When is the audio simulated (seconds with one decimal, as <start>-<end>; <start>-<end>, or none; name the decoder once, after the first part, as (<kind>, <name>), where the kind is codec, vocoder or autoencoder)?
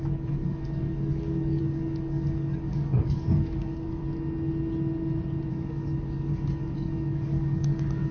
0.0-4.0 (codec, DAC); 5.5-8.1